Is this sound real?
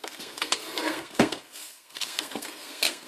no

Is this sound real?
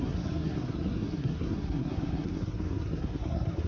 no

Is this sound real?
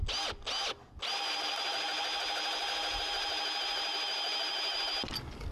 yes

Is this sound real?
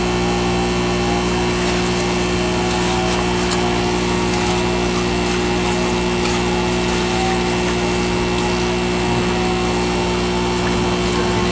yes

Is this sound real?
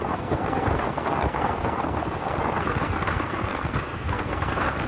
no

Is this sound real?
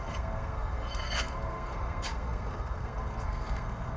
no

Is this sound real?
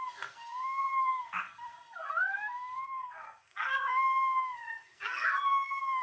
no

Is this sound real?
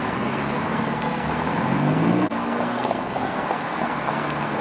no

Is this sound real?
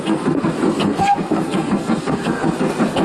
no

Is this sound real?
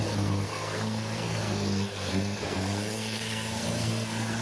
no